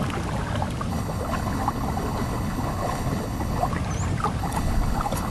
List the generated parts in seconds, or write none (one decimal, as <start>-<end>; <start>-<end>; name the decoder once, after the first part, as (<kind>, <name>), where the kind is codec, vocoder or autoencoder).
0.9-3.7 (codec, HILCodec); 4.4-5.3